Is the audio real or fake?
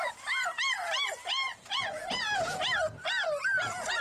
real